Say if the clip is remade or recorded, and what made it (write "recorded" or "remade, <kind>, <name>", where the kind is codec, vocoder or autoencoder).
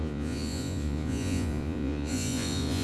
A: remade, vocoder, Vocos